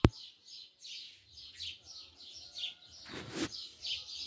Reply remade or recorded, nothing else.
recorded